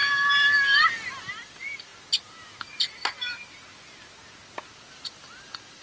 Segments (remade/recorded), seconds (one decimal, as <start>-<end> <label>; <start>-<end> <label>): 0.0-1.9 remade; 1.9-4.9 recorded; 4.9-5.8 remade